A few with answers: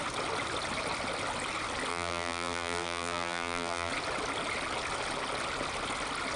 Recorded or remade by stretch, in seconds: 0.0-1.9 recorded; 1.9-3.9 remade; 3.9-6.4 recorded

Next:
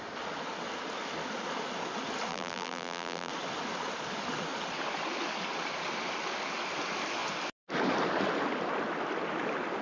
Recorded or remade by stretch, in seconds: 0.0-2.3 recorded; 2.3-3.3 remade; 3.3-9.8 recorded

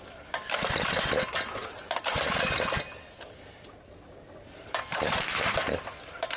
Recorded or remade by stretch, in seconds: 0.0-6.4 recorded

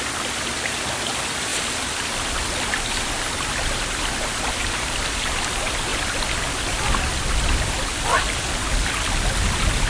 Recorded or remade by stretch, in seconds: 0.0-1.5 recorded; 1.5-4.6 remade; 4.6-5.9 recorded; 5.9-6.4 remade; 6.4-9.9 recorded

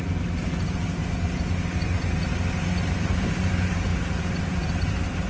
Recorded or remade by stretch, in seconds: 0.0-1.0 remade; 1.0-2.8 recorded; 2.8-5.3 remade

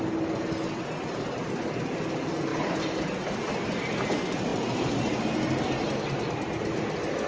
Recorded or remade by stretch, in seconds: 0.0-4.5 recorded; 4.5-5.6 remade; 5.6-7.3 recorded